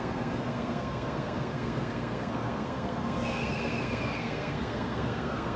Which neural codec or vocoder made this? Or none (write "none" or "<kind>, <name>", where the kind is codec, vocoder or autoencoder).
codec, SNAC